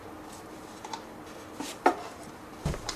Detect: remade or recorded remade